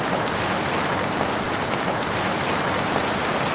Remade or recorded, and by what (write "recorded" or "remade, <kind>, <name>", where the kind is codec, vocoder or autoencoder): recorded